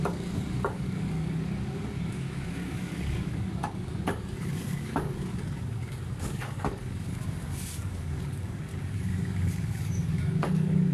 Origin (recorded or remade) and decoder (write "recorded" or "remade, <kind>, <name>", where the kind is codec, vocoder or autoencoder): remade, codec, DAC